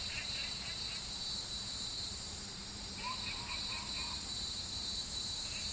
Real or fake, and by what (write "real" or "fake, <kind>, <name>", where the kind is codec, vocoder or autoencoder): fake, vocoder, BigVGAN v2